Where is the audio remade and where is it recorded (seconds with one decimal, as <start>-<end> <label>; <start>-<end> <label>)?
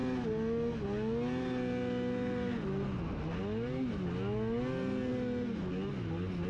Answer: 0.0-6.5 recorded